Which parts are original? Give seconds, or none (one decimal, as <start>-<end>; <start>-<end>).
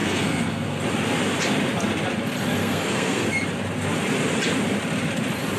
0.8-2.6; 3.3-5.6